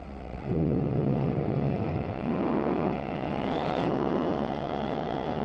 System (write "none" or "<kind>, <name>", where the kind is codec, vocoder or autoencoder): vocoder, WaveNeXt